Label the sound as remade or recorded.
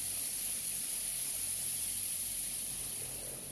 recorded